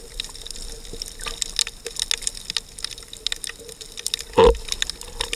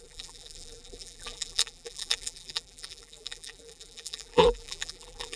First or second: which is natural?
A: first